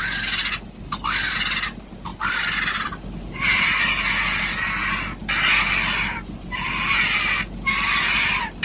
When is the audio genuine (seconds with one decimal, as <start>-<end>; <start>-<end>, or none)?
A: 0.0-8.6